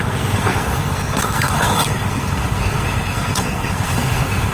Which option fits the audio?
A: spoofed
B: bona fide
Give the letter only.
A